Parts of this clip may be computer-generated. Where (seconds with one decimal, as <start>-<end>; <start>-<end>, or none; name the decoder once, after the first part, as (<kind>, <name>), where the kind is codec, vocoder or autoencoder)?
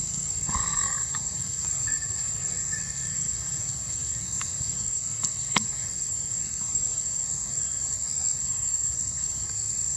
0.0-10.0 (codec, SNAC)